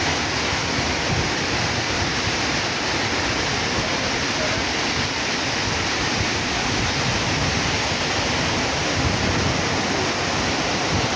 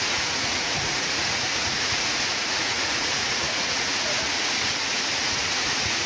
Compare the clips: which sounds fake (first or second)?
second